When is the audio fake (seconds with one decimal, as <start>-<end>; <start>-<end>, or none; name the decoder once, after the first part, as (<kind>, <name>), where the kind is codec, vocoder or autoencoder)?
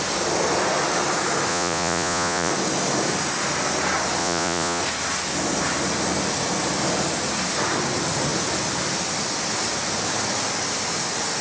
1.5-2.5 (vocoder, Vocos); 4.2-4.8